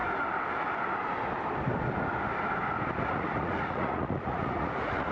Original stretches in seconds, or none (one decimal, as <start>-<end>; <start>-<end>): 0.0-3.1